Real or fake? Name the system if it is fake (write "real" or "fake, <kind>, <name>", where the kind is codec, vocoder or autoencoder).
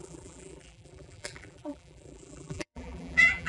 fake, vocoder, BigVGAN v2